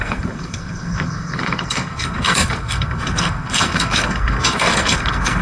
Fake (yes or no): yes